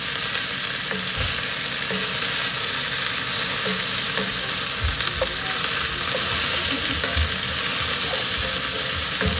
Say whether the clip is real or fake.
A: real